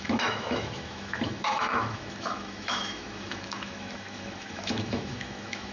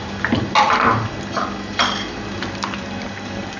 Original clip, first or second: second